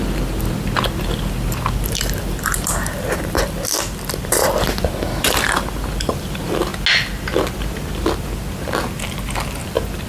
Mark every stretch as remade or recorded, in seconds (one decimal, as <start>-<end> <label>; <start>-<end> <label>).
0.0-1.0 recorded; 1.0-6.7 remade; 6.7-10.1 recorded